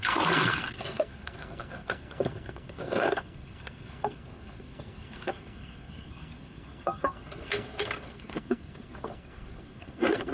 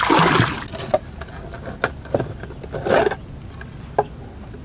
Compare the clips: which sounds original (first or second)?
second